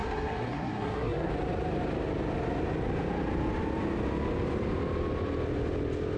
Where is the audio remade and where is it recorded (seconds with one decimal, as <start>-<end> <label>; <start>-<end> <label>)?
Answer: 0.0-1.3 remade; 1.3-6.2 recorded